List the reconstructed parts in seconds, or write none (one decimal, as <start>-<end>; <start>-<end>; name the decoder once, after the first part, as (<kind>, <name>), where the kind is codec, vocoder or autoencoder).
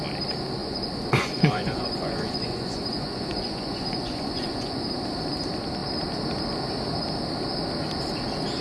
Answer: 0.6-4.9 (vocoder, Vocos)